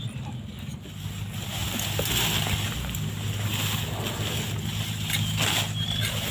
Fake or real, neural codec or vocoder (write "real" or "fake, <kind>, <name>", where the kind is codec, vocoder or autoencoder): real